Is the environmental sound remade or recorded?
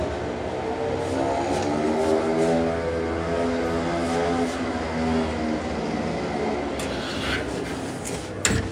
recorded